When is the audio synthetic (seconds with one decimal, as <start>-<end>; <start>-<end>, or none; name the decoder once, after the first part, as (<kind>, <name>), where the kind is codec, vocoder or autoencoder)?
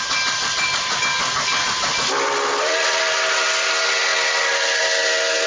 none